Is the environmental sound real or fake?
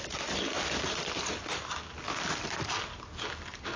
real